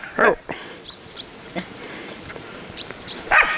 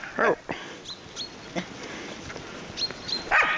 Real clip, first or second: second